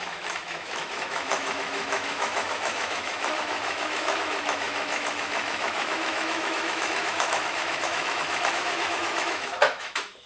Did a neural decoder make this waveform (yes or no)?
yes